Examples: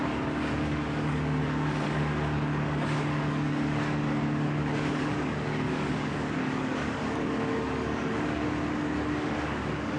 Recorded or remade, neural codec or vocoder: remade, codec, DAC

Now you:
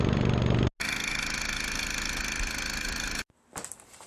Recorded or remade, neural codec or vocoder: recorded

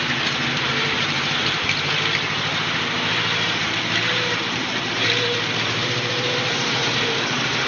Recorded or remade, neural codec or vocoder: remade, vocoder, BigVGAN v2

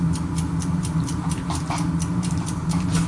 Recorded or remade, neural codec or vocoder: recorded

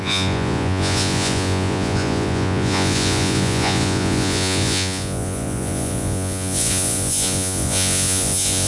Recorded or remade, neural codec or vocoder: remade, vocoder, Vocos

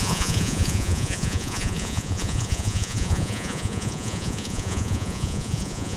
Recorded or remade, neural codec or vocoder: remade, vocoder, Vocos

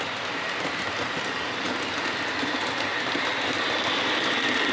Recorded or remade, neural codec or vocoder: recorded